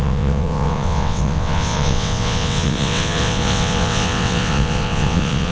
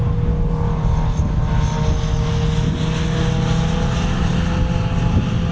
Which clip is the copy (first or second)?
first